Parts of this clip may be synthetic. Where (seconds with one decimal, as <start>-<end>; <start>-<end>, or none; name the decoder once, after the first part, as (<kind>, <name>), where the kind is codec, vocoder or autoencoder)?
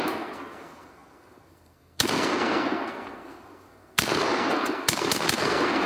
0.0-5.9 (codec, SNAC)